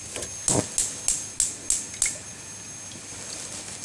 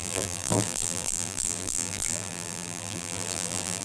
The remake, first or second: second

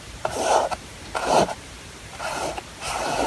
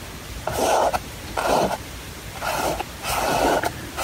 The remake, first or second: first